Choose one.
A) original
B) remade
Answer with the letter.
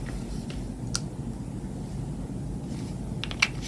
A